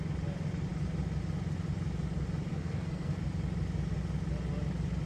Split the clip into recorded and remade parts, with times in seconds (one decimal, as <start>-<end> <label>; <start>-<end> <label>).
0.0-2.5 recorded; 2.5-3.2 remade; 3.2-5.1 recorded